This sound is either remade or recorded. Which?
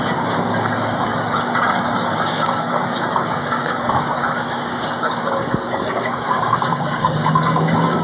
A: remade